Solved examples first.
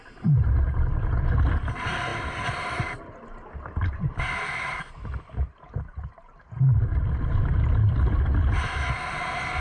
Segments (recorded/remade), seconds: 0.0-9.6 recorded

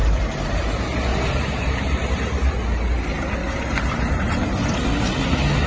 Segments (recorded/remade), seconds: 0.0-0.6 remade; 0.6-1.1 recorded; 1.1-2.5 remade; 2.5-3.4 recorded; 3.4-4.4 remade; 4.4-5.7 recorded

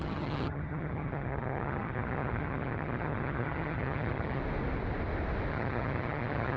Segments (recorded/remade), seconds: 0.0-4.4 remade; 4.4-5.5 recorded; 5.5-6.6 remade